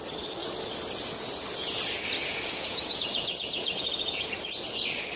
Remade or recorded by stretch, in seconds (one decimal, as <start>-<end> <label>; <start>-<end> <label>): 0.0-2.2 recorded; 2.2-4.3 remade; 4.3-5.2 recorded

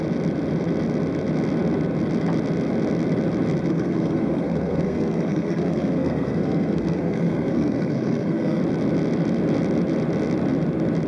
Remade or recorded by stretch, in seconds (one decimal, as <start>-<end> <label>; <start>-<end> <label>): 0.0-3.7 recorded; 3.7-8.6 remade; 8.6-11.1 recorded

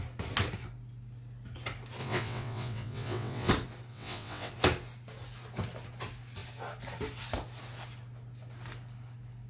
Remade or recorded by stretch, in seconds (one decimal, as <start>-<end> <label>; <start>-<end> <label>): 0.0-2.0 recorded; 2.0-3.5 remade; 3.5-3.9 recorded; 3.9-4.5 remade; 4.5-9.5 recorded